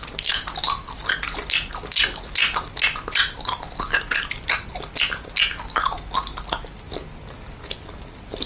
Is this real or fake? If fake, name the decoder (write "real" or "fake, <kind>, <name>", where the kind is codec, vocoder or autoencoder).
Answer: real